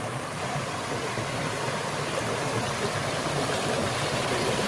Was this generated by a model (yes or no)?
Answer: no